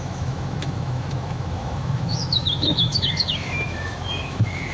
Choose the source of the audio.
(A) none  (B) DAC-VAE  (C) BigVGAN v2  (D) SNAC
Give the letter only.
B